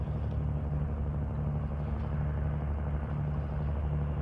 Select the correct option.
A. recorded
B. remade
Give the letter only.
A